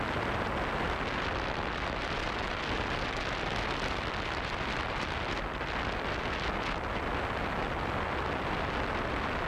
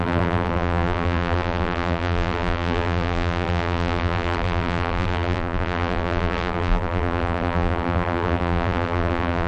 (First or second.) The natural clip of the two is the first